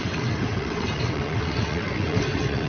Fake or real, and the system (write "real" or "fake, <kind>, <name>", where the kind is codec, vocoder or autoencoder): fake, vocoder, WaveNeXt